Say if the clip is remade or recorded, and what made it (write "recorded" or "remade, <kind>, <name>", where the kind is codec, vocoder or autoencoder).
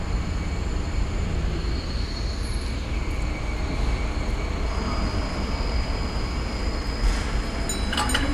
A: recorded